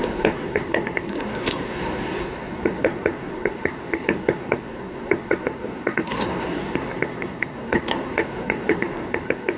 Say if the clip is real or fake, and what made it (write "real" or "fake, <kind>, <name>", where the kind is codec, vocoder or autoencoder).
fake, codec, SNAC